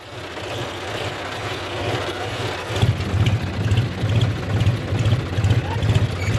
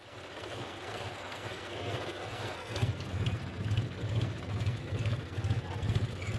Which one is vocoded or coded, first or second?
second